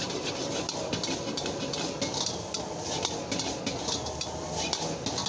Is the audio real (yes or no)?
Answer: yes